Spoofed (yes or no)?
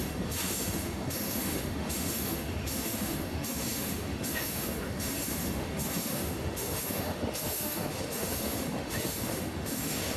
yes